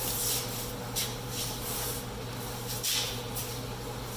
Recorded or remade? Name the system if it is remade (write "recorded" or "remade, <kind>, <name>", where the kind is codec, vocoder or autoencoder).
recorded